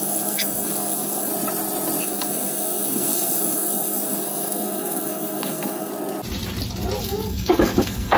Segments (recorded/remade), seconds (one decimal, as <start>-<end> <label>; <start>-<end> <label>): 0.0-1.3 remade; 1.3-2.0 recorded; 2.0-5.9 remade; 5.9-7.0 recorded; 7.0-8.2 remade

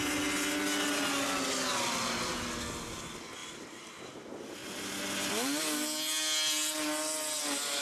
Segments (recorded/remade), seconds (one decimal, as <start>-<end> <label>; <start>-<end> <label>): 0.0-3.4 recorded; 3.4-4.0 remade; 4.0-7.8 recorded

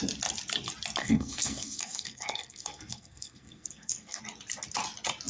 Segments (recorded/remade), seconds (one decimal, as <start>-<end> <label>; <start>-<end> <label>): 0.0-1.0 recorded; 1.0-4.2 remade; 4.2-5.3 recorded

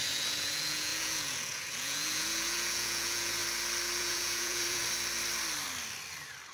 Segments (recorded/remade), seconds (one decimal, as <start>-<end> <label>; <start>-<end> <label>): 0.0-3.4 remade; 3.4-4.0 recorded; 4.0-4.8 remade; 4.8-6.5 recorded

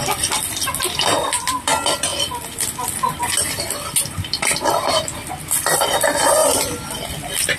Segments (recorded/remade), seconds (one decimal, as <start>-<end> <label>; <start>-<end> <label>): 0.0-6.4 recorded; 6.4-7.6 remade

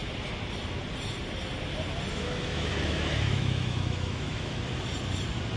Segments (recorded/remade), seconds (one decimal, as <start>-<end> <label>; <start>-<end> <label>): 0.0-2.1 recorded; 2.1-4.6 remade; 4.6-5.6 recorded